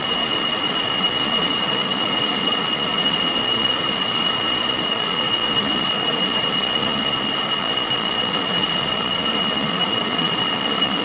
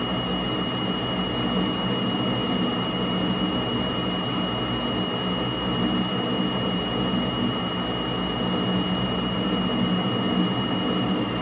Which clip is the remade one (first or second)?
first